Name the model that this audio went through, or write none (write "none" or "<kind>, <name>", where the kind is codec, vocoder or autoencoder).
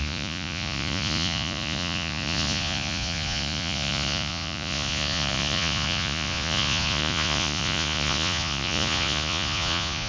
vocoder, Vocos